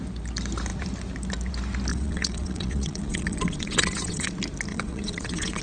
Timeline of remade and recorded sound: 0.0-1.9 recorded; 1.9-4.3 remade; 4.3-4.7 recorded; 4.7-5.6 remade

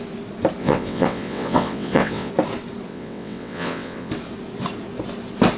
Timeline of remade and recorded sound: 0.0-0.6 recorded; 0.6-2.3 remade; 2.3-2.9 recorded; 2.9-4.1 remade; 4.1-5.6 recorded

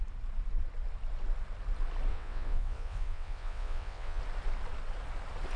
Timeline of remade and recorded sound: 0.0-2.1 recorded; 2.1-4.2 remade; 4.2-5.6 recorded

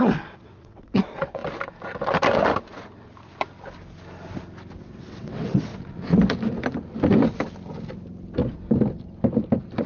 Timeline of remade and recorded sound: 0.0-1.4 remade; 1.4-4.8 recorded; 4.8-5.7 remade; 5.7-9.9 recorded

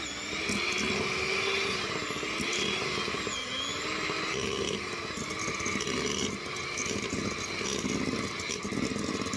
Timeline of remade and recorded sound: 0.0-9.4 recorded